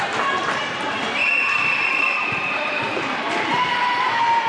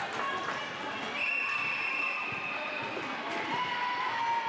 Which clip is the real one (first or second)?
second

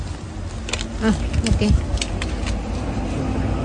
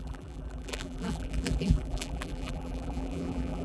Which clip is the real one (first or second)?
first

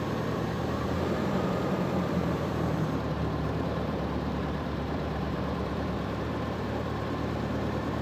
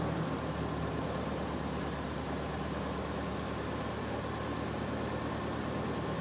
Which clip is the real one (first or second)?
second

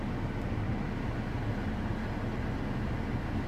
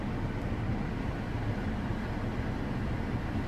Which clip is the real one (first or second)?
first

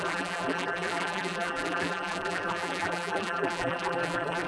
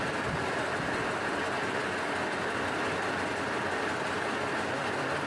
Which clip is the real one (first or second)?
second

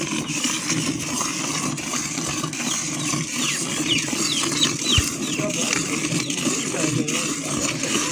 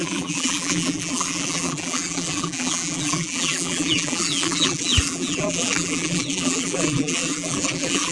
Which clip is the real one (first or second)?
first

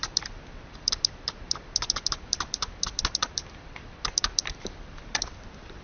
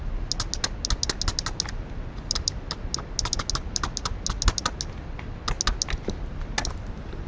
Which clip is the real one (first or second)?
second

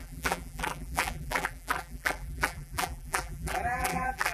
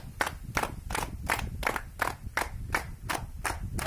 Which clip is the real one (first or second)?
second